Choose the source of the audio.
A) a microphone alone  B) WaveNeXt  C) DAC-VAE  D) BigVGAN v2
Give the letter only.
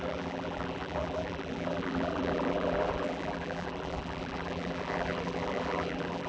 D